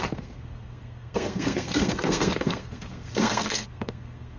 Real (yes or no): no